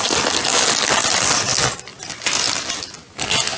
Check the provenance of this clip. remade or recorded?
recorded